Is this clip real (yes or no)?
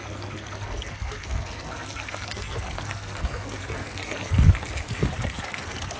no